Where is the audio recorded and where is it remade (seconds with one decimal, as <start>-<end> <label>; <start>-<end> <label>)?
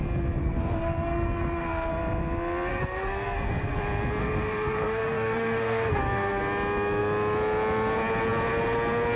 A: 0.0-0.4 recorded; 0.4-1.9 remade; 1.9-2.7 recorded; 2.7-3.8 remade; 3.8-4.2 recorded; 4.2-6.4 remade; 6.4-9.2 recorded